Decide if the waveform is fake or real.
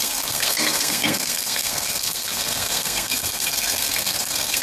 fake